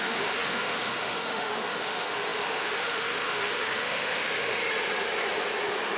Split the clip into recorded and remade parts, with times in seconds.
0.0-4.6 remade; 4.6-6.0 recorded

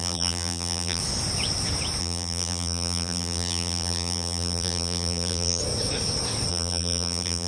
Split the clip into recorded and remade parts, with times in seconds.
0.0-1.0 remade; 1.0-2.0 recorded; 2.0-5.6 remade; 5.6-6.5 recorded; 6.5-7.5 remade

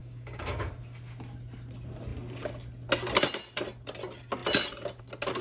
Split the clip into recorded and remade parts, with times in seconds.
0.0-0.7 remade; 0.7-5.4 recorded

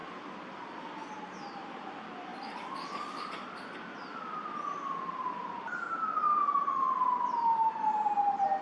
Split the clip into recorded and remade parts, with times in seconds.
0.0-8.6 recorded

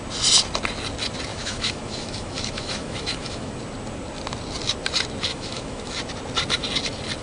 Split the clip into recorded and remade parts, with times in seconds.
0.0-1.3 recorded; 1.3-3.5 remade; 3.5-5.3 recorded; 5.3-6.0 remade; 6.0-7.2 recorded

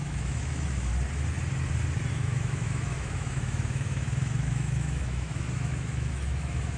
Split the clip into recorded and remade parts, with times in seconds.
0.0-0.9 remade; 0.9-2.1 recorded; 2.1-6.8 remade

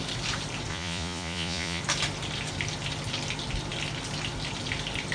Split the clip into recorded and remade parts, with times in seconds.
0.0-0.7 recorded; 0.7-1.8 remade; 1.8-5.1 recorded